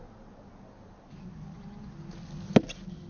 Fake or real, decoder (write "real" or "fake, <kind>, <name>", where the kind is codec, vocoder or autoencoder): real